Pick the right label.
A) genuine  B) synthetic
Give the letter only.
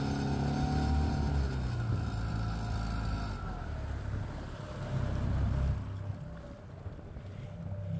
A